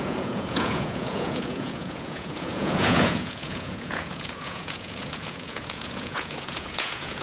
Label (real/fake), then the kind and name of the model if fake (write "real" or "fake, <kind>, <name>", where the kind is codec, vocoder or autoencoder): fake, vocoder, Vocos